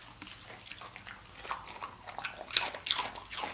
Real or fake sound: real